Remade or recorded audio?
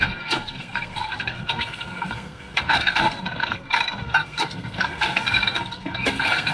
remade